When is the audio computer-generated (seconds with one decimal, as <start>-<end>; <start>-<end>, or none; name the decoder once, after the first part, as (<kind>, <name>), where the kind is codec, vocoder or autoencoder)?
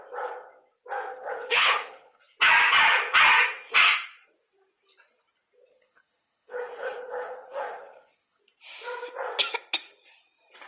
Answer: 1.1-2.2 (codec, HILCodec); 5.7-8.4